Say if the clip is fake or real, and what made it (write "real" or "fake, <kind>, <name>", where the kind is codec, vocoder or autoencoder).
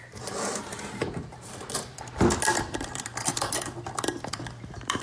fake, vocoder, BigVGAN v2